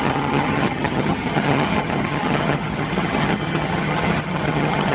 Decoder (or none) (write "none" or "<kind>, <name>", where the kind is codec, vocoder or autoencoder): vocoder, HiFi-GAN